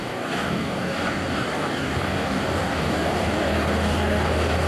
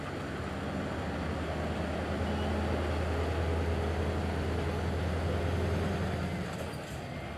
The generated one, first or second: first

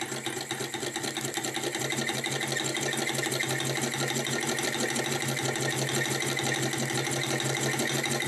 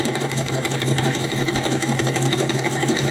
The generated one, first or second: second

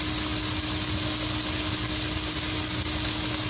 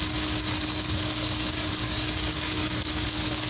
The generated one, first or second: second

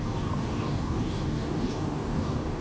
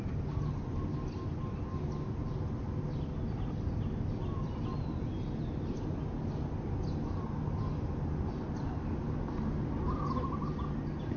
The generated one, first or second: first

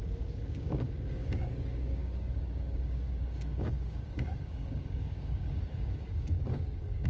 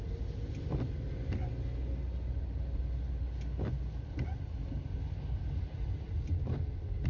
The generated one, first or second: first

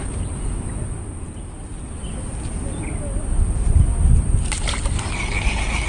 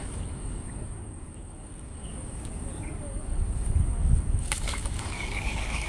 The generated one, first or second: second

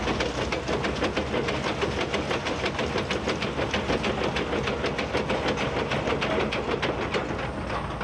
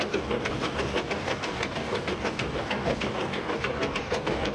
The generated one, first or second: second